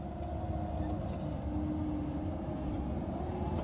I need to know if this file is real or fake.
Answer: real